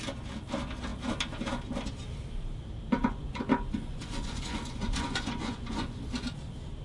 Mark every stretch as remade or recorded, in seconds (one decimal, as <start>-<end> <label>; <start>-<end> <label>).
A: 0.0-3.0 recorded; 3.0-6.0 remade; 6.0-6.8 recorded